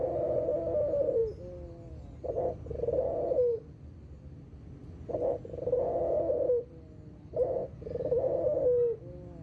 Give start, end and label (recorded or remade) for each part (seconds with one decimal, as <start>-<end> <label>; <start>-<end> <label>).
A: 0.0-9.4 recorded